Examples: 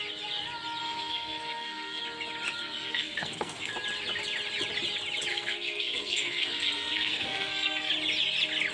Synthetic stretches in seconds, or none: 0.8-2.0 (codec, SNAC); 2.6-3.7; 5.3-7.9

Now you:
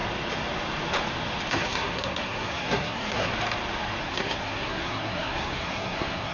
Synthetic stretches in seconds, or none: 1.5-3.3 (codec, SNAC); 4.0-6.3